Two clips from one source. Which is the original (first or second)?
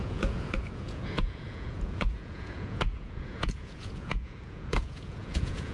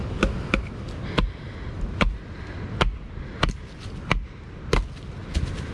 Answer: second